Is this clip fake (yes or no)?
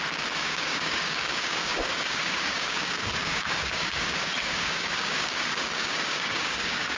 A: yes